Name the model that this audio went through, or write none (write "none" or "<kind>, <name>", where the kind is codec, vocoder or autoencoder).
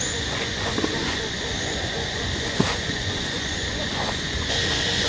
vocoder, Vocos